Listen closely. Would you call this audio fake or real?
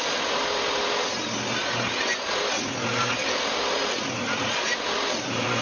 real